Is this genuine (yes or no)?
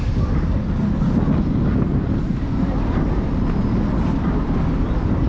yes